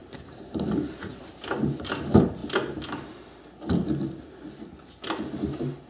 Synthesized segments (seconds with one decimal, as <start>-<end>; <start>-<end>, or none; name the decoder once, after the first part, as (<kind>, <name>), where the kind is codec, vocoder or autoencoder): 0.0-0.7 (vocoder, BigVGAN v2)